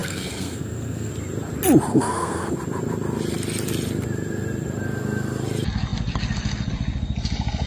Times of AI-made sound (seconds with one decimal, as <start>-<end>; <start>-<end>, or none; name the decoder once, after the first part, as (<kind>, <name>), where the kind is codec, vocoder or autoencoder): 0.0-1.1 (codec, SNAC); 1.9-2.5